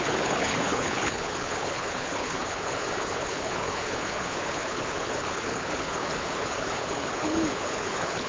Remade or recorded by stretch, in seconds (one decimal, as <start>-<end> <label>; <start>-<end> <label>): 0.0-8.3 remade